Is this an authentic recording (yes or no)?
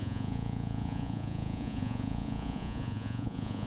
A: no